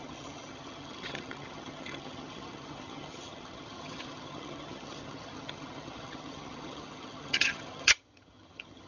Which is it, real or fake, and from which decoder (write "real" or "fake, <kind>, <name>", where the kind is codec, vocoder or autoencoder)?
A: fake, vocoder, HiFi-GAN